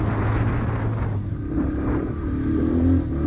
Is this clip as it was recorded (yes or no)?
yes